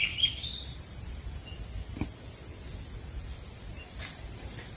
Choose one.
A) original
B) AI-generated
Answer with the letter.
A